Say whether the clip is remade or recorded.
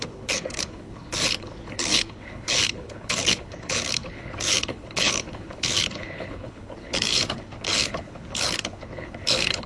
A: remade